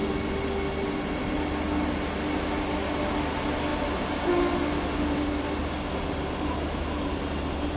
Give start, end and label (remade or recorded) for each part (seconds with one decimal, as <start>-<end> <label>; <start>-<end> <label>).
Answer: 0.0-7.8 recorded